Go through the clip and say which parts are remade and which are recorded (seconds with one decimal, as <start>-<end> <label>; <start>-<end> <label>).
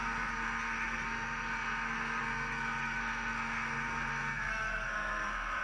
0.0-5.6 remade